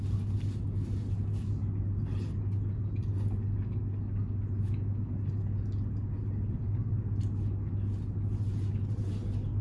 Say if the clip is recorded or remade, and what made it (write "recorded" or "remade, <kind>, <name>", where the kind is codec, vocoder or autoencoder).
recorded